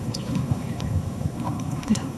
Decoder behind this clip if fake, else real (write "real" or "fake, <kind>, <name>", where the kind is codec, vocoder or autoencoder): fake, codec, SNAC